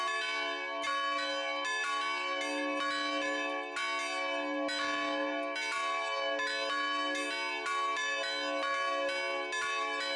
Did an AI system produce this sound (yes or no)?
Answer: no